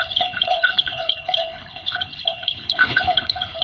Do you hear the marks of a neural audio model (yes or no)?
yes